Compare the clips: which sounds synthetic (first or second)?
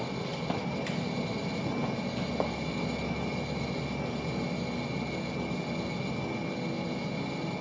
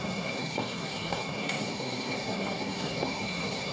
second